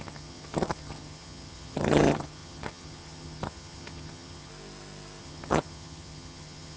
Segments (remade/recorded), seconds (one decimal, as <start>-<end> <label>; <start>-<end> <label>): 0.0-4.5 remade; 4.5-5.2 recorded; 5.2-6.8 remade